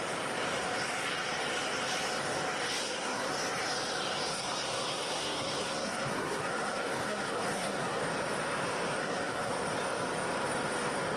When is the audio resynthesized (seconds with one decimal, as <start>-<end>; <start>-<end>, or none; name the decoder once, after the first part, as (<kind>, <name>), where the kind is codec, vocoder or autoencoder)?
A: 2.8-3.3 (codec, SNAC); 4.3-8.0; 9.0-9.5